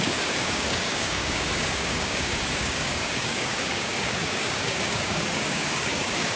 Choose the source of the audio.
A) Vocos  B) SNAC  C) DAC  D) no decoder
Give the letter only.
C